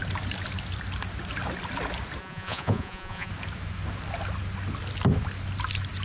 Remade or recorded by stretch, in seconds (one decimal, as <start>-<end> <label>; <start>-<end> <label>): 0.0-2.2 recorded; 2.2-3.3 remade; 3.3-6.0 recorded